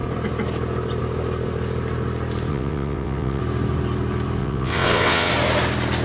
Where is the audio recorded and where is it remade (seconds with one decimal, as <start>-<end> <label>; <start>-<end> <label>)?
0.0-2.5 recorded; 2.5-3.4 remade; 3.4-4.4 recorded; 4.4-5.3 remade; 5.3-6.0 recorded